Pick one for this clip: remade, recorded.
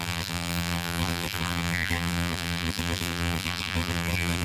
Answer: remade